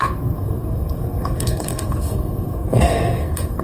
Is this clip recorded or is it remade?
remade